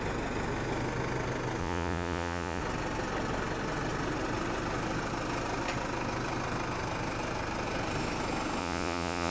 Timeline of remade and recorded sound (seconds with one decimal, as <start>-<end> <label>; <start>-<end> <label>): 0.0-1.6 recorded; 1.6-2.6 remade; 2.6-8.6 recorded; 8.6-9.3 remade